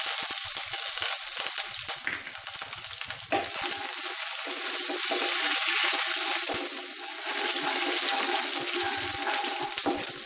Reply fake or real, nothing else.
real